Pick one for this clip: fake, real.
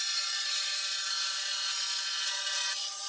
fake